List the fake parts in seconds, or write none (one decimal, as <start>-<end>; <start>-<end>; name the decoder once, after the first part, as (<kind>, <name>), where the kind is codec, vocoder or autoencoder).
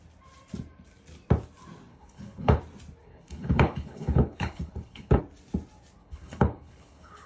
1.9-2.6 (codec, HILCodec); 3.0-5.2; 6.0-7.3